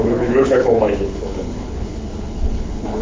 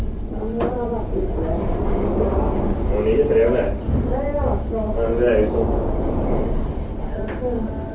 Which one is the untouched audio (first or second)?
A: second